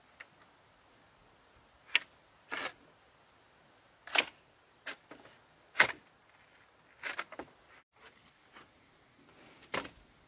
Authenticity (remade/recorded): recorded